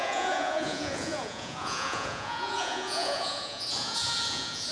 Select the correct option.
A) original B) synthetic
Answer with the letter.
B